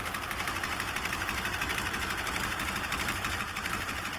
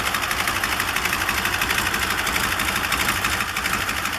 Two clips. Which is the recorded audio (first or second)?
second